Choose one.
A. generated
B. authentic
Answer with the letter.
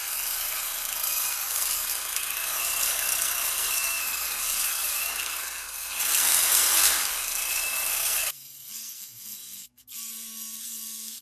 A